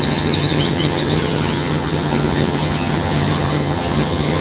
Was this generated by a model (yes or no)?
yes